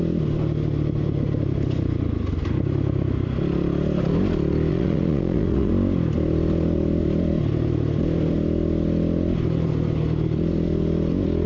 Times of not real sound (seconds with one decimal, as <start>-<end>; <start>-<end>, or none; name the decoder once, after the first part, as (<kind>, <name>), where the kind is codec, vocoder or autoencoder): 4.7-5.7 (vocoder, Vocos)